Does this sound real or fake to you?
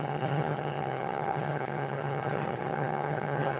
fake